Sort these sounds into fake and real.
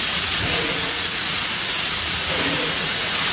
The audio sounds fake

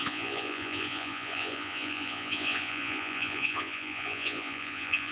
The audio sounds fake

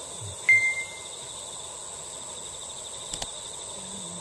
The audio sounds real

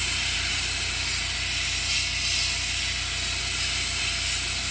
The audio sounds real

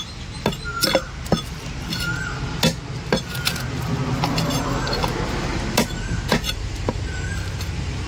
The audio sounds real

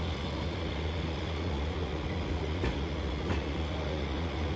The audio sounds fake